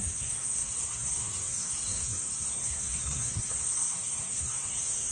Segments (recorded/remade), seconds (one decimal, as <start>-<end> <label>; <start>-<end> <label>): 0.0-5.1 remade

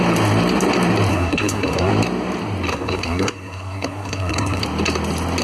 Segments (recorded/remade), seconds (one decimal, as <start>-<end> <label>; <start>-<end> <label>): 0.0-1.1 recorded; 1.1-1.9 remade; 1.9-2.7 recorded; 2.7-4.6 remade; 4.6-5.4 recorded